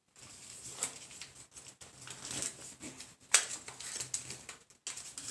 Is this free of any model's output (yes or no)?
yes